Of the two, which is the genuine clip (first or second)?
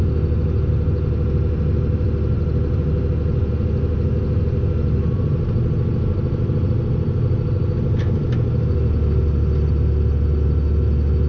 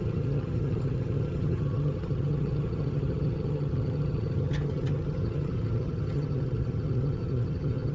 first